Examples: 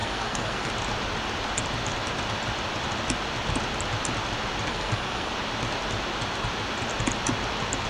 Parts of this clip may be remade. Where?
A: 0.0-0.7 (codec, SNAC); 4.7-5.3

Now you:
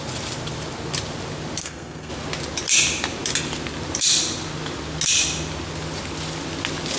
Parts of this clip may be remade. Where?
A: 1.6-2.1 (codec, SNAC)

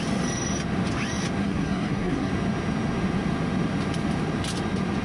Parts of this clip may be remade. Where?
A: 1.4-2.3 (codec, SNAC)

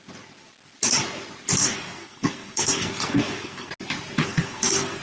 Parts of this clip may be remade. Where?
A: 1.6-3.7 (codec, SNAC); 4.2-5.0